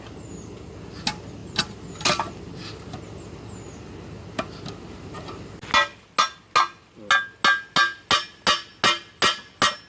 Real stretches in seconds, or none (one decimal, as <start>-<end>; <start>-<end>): 0.0-9.9